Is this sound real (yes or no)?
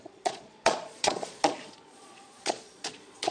no